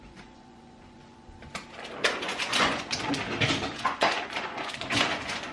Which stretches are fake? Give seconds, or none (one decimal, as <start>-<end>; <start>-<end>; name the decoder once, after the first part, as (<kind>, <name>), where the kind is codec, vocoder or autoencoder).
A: 0.0-1.4 (vocoder, Vocos); 2.2-3.1; 3.7-5.5